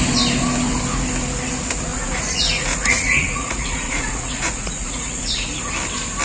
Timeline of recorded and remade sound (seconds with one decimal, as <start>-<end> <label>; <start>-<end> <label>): 0.0-1.9 recorded; 1.9-5.6 remade; 5.6-6.2 recorded